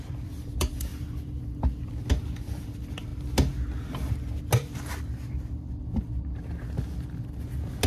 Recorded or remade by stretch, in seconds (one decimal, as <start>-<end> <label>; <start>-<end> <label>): 0.0-0.9 remade; 0.9-2.1 recorded; 2.1-3.1 remade; 3.1-7.9 recorded